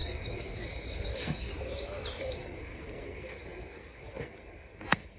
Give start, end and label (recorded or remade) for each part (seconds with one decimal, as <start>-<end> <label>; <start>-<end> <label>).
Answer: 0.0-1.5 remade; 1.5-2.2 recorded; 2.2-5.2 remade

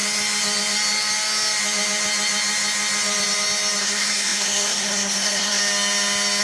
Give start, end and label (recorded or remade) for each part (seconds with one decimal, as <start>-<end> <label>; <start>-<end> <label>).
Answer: 0.0-3.8 recorded; 3.8-5.6 remade; 5.6-6.4 recorded

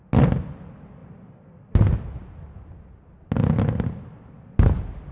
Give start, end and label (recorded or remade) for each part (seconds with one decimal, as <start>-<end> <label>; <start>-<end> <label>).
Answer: 0.0-5.1 recorded

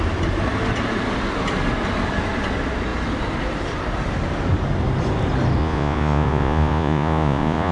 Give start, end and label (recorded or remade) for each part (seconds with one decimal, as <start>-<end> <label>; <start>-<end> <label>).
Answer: 0.0-5.6 recorded; 5.6-7.7 remade